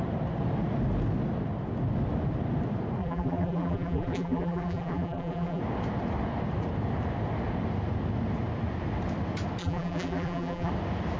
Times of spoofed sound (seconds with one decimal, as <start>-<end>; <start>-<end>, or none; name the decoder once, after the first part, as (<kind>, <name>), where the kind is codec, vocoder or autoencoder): 3.0-5.6 (vocoder, BigVGAN v2); 9.6-10.7